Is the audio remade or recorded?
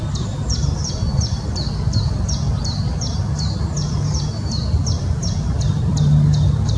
remade